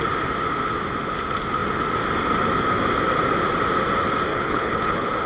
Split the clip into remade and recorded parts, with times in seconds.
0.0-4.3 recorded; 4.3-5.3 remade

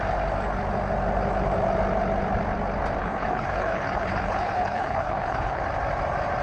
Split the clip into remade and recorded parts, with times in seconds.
0.0-3.0 recorded; 3.0-5.6 remade; 5.6-6.4 recorded